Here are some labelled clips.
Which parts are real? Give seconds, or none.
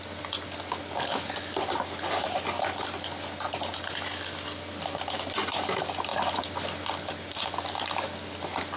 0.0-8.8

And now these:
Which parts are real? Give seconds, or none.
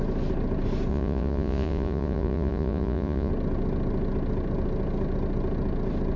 0.0-0.9; 3.3-6.2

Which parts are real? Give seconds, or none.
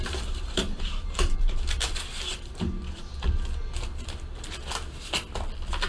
2.8-5.9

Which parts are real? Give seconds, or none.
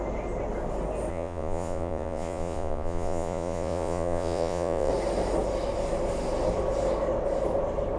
0.0-1.1; 4.9-8.0